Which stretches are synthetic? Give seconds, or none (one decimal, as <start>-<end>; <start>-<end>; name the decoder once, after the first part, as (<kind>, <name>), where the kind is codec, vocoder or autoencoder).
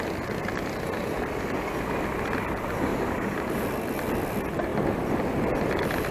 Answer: 2.9-3.6 (vocoder, BigVGAN v2)